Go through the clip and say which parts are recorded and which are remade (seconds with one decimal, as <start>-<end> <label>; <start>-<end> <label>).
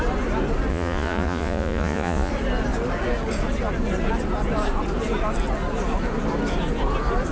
0.0-0.7 recorded; 0.7-2.3 remade; 2.3-7.3 recorded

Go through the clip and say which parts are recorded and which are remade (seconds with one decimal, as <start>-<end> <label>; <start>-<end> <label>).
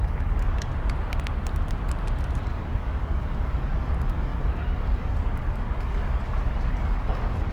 0.0-0.7 remade; 0.7-2.4 recorded; 2.4-7.5 remade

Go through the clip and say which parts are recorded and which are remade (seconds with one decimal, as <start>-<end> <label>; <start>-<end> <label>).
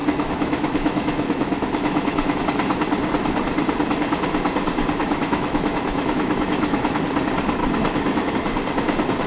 0.0-2.4 remade; 2.4-5.0 recorded; 5.0-7.0 remade; 7.0-7.6 recorded; 7.6-8.3 remade; 8.3-9.3 recorded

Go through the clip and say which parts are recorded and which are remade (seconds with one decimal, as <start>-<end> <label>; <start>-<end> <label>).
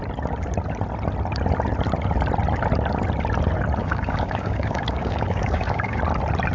0.0-3.8 recorded; 3.8-6.0 remade; 6.0-6.5 recorded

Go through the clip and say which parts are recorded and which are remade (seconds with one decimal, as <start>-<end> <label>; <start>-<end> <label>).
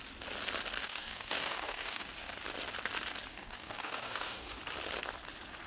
0.0-0.8 recorded; 0.8-2.1 remade; 2.1-3.3 recorded; 3.3-4.6 remade; 4.6-5.7 recorded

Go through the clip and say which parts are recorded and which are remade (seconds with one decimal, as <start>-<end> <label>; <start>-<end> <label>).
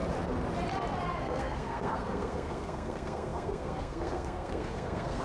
0.0-1.2 recorded; 1.2-5.2 remade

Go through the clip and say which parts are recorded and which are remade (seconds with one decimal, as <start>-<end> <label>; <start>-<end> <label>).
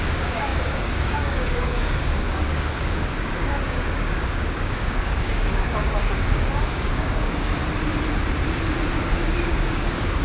0.0-7.6 remade; 7.6-9.1 recorded; 9.1-10.2 remade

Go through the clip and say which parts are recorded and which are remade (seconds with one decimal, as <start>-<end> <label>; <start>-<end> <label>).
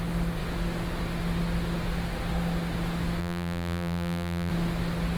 0.0-3.2 recorded; 3.2-4.5 remade; 4.5-5.2 recorded